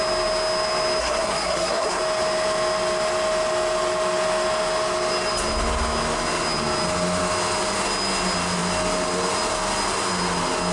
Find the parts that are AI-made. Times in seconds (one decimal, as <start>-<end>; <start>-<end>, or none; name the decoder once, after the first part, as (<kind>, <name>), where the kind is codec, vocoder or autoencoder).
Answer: 1.0-2.0 (codec, SNAC)